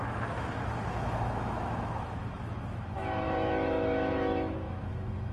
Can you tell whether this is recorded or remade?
remade